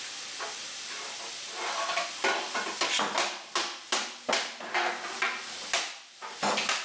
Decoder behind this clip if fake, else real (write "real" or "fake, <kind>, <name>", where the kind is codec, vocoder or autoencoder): real